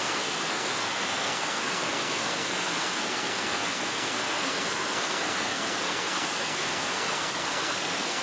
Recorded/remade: remade